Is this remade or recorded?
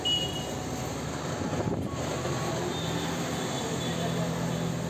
recorded